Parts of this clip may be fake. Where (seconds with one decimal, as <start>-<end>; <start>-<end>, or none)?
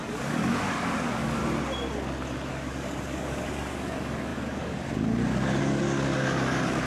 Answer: 0.0-1.4; 2.5-6.9